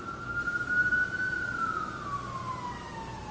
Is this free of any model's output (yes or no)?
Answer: yes